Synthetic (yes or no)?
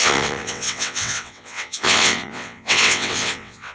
yes